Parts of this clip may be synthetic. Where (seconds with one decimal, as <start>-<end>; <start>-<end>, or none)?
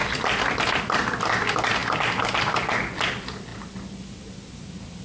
none